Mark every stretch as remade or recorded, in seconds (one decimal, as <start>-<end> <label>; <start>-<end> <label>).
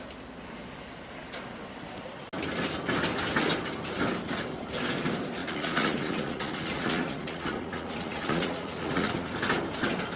0.0-5.4 recorded; 5.4-9.3 remade; 9.3-10.2 recorded